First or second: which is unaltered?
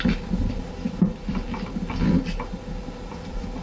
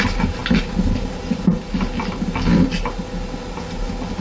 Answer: second